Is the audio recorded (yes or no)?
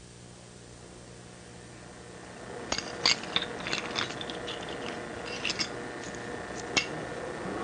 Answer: yes